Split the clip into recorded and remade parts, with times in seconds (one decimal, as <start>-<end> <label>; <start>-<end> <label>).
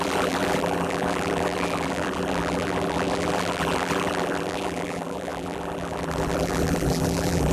0.0-7.5 remade